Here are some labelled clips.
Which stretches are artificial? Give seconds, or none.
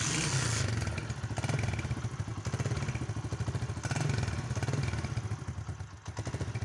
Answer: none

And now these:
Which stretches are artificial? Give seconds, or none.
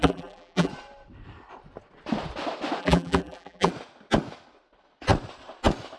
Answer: 0.0-0.7; 2.8-3.7